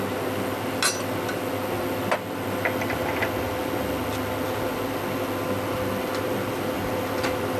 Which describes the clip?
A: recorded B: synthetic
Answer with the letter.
A